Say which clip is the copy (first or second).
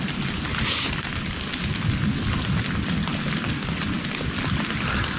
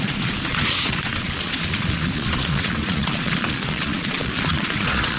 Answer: second